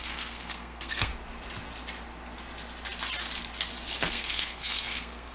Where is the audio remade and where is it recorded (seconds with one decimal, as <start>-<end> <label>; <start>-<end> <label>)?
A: 0.0-1.1 remade; 1.1-4.0 recorded; 4.0-5.3 remade